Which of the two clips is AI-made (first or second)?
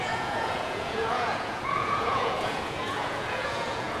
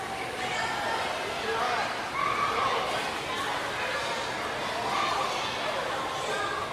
first